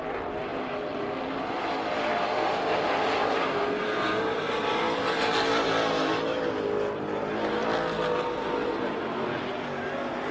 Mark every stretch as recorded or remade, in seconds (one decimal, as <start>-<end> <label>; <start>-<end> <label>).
0.0-10.3 recorded